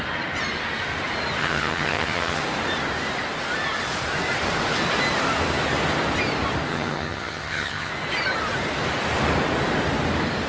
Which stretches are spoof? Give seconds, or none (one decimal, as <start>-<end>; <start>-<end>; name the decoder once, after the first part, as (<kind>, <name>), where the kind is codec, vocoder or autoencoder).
1.4-2.4 (vocoder, HiFi-GAN); 6.7-7.9